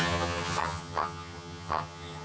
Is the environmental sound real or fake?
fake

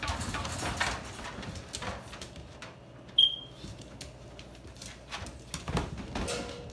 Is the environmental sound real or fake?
real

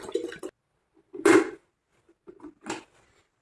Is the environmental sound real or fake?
real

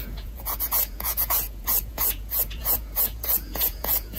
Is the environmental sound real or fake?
fake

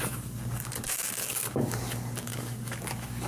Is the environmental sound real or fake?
fake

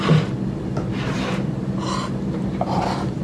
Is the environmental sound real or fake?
real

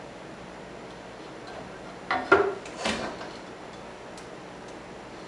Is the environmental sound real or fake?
real